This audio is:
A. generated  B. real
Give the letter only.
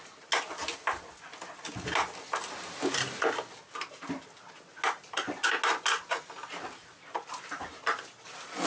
B